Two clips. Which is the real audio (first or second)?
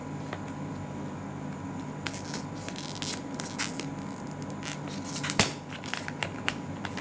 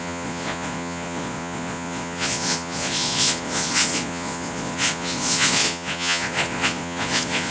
first